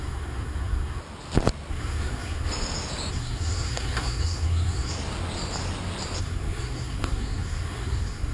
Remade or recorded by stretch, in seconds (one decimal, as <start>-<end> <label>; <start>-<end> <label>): 0.0-1.0 remade; 1.0-1.7 recorded; 1.7-2.5 remade; 2.5-3.1 recorded; 3.1-4.9 remade; 4.9-6.2 recorded; 6.2-8.3 remade